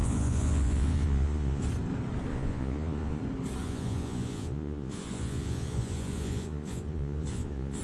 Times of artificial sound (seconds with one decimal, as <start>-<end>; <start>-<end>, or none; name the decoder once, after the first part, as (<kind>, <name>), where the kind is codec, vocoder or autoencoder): 0.0-1.6 (vocoder, Vocos); 2.3-3.2; 3.6-7.8